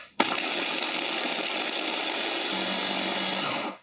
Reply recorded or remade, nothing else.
recorded